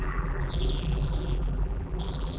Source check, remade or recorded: remade